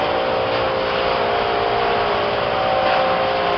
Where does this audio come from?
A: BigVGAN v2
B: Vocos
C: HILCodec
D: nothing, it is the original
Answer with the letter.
D